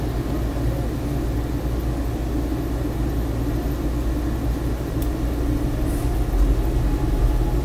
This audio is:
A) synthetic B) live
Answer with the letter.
B